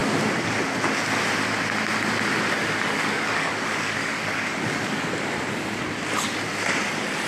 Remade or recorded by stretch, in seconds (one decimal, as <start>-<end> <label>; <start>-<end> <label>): 0.0-2.6 recorded; 2.6-5.1 remade; 5.1-7.3 recorded